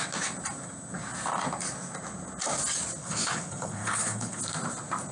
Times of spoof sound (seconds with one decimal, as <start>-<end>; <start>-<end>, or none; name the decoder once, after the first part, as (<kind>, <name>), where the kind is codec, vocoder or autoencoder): 3.0-4.4 (codec, HILCodec)